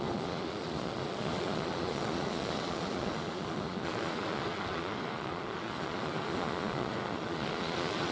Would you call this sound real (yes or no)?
no